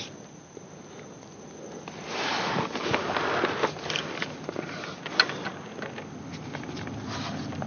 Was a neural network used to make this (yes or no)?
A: no